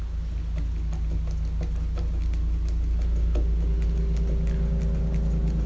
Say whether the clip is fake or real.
real